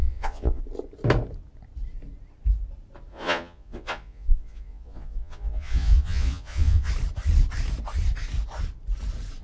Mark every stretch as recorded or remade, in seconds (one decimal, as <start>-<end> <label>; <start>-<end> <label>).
0.0-0.6 remade; 0.6-3.1 recorded; 3.1-6.9 remade; 6.9-9.4 recorded